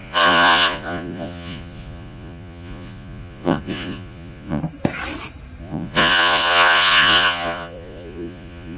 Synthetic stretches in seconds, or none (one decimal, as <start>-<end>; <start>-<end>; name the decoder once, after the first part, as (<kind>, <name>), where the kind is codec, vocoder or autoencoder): 0.0-4.6 (vocoder, Vocos); 5.6-8.8